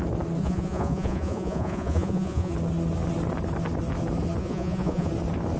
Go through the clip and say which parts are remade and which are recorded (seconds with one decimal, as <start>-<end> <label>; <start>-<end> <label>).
0.0-0.4 recorded; 0.4-2.5 remade; 2.5-4.4 recorded; 4.4-5.1 remade; 5.1-5.6 recorded